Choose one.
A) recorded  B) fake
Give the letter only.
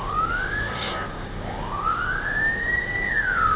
B